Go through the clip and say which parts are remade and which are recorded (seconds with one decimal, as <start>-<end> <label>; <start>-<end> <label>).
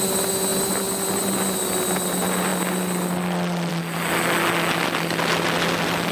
0.0-6.1 recorded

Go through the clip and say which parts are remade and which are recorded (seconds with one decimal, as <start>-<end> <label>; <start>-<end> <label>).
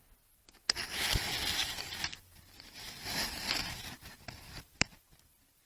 0.0-1.6 recorded; 1.6-5.0 remade; 5.0-5.7 recorded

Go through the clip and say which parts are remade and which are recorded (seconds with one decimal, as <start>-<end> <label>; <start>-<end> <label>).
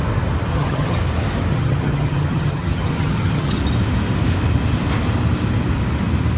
0.0-0.5 recorded; 0.5-1.0 remade; 1.0-1.5 recorded; 1.5-3.6 remade; 3.6-6.4 recorded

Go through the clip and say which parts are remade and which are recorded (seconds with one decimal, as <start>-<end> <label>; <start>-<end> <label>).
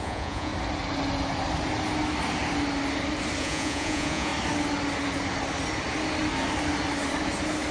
0.0-0.5 remade; 0.5-3.4 recorded; 3.4-4.3 remade; 4.3-7.7 recorded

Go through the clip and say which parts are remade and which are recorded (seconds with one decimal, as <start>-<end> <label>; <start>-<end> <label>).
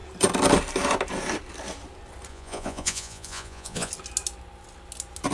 0.0-2.3 recorded; 2.3-3.9 remade; 3.9-5.3 recorded